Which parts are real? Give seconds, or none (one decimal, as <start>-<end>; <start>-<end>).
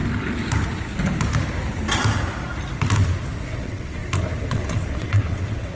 0.0-3.5; 4.0-4.5